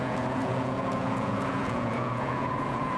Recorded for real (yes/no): no